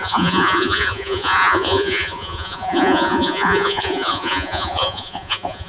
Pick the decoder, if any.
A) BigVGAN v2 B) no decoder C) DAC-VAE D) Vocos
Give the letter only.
D